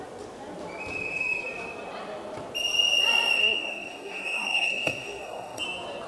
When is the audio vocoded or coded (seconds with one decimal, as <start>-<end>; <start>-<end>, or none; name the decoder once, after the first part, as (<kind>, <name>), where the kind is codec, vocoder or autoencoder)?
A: 3.4-5.6 (codec, SNAC)